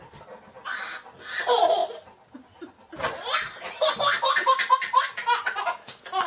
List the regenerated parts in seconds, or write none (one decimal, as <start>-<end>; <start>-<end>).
none